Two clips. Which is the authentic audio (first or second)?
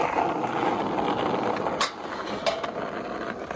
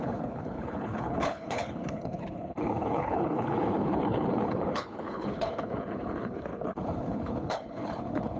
first